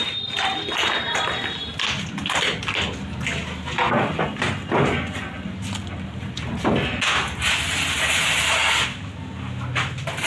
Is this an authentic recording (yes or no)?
yes